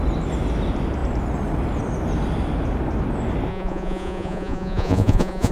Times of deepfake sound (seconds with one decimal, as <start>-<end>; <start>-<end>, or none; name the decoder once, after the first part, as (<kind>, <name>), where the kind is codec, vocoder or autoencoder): 3.5-5.5 (vocoder, Vocos)